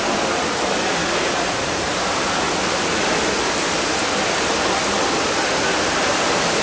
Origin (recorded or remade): recorded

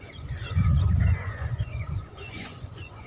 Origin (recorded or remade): remade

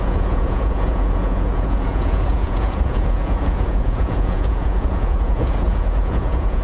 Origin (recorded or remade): remade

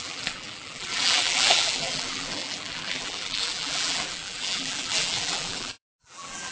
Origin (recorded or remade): remade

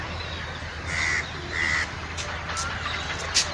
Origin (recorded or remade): recorded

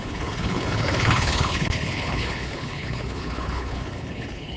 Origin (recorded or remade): remade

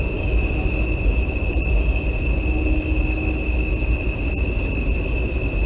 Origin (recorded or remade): recorded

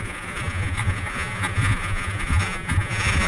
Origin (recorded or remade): remade